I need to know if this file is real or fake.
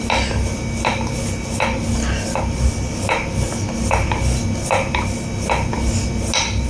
real